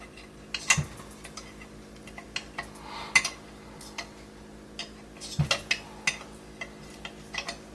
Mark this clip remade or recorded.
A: recorded